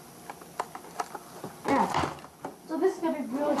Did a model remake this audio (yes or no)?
no